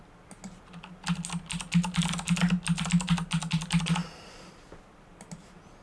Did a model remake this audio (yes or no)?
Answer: no